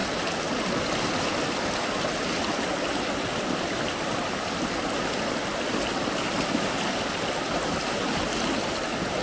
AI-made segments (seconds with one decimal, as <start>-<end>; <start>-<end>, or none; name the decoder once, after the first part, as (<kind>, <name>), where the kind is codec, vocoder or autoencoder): none